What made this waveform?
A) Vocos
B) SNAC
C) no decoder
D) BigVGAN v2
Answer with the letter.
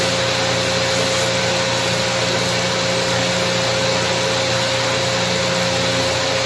C